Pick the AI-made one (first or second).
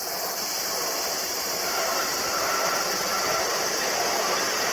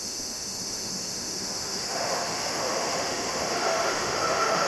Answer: second